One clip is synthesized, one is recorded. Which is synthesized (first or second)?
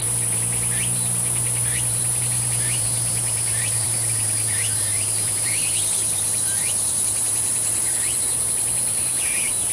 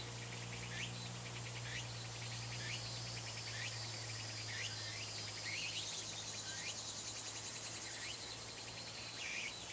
first